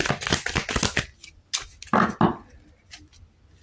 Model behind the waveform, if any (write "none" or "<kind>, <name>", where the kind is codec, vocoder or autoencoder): none